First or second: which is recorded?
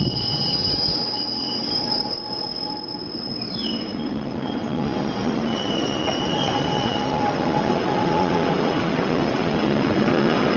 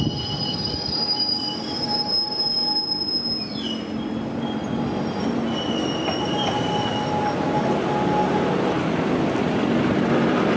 second